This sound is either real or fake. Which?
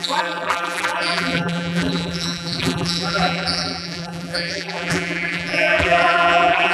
fake